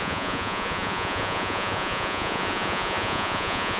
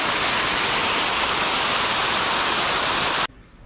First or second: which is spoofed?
first